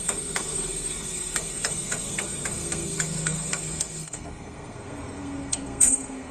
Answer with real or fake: fake